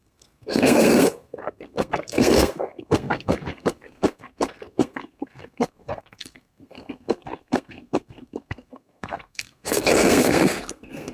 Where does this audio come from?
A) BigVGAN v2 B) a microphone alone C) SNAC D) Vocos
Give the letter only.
C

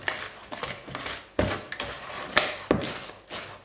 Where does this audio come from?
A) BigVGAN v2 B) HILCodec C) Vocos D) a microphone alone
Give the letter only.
D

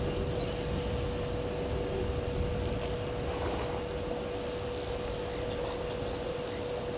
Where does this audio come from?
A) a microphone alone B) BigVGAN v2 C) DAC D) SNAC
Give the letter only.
A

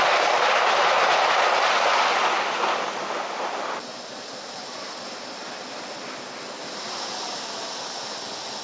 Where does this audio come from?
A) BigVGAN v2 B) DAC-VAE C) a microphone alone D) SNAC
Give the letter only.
C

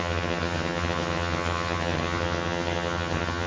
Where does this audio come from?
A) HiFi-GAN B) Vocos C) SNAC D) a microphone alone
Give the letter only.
A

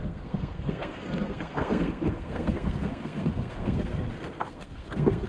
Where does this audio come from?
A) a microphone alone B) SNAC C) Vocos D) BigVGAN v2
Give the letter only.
B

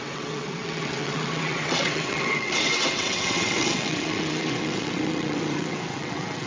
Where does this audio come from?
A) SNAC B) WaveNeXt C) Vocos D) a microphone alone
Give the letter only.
B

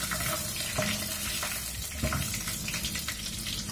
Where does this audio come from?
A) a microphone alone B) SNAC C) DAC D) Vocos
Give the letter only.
A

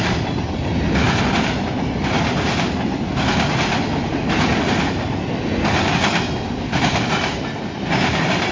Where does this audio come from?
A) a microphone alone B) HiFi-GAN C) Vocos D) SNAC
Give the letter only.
A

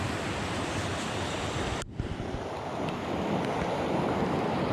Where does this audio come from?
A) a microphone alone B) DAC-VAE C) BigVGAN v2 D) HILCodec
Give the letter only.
A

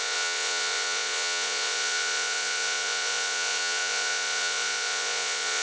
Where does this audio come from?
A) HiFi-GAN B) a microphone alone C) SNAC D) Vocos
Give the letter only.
D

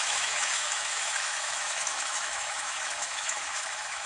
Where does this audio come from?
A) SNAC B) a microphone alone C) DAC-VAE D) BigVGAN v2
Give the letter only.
C